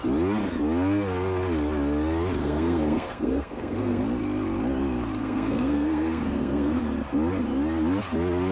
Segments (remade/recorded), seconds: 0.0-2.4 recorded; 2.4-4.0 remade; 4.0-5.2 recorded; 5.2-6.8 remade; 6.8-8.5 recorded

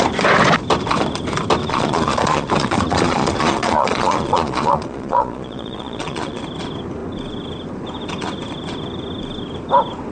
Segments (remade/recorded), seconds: 0.0-1.6 recorded; 1.6-6.4 remade; 6.4-10.1 recorded

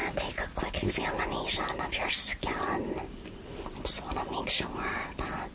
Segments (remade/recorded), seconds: 0.0-5.5 recorded